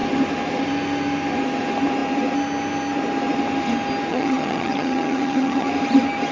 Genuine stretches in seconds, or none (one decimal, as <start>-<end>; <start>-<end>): 0.0-4.1; 5.7-6.3